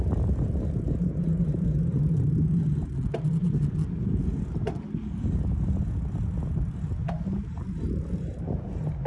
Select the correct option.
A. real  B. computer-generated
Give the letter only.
A